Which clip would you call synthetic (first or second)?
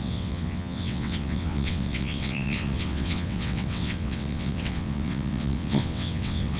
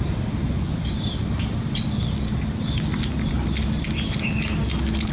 first